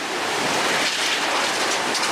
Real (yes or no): yes